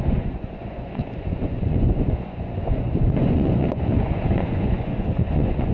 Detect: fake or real fake